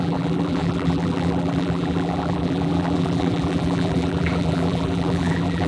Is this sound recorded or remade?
remade